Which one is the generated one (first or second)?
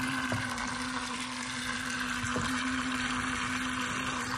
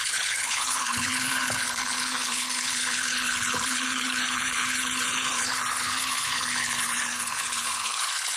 second